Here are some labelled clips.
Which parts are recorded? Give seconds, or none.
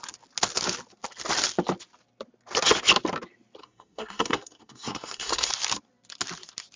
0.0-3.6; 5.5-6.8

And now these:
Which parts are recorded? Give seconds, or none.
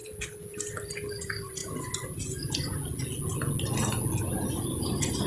0.0-5.3